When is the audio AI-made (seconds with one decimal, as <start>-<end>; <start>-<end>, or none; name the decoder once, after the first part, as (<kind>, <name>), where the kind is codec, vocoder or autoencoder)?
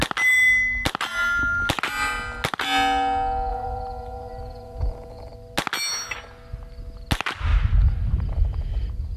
3.5-5.3 (vocoder, Vocos)